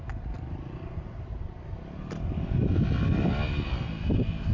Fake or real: real